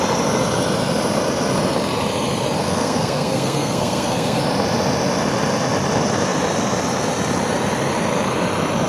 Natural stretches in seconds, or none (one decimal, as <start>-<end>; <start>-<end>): 0.0-2.6; 4.4-8.9